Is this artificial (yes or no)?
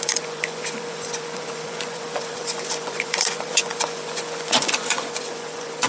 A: yes